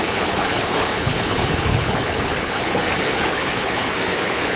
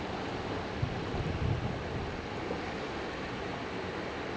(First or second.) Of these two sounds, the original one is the second